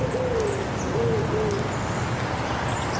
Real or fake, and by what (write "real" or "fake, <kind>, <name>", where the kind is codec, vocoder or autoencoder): real